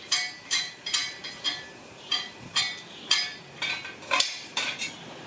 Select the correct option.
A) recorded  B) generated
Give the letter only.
B